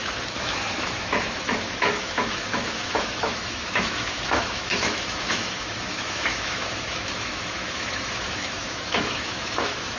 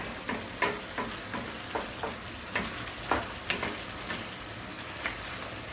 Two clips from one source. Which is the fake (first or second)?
first